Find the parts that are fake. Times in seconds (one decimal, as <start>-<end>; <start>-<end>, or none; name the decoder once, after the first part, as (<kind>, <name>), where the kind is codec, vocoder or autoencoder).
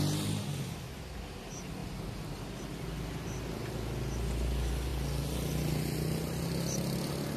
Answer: none